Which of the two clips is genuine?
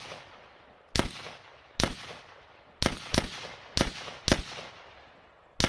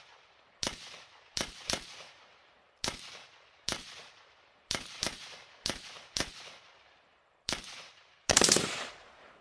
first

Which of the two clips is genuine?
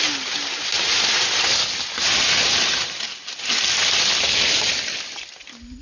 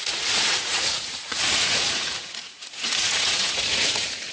first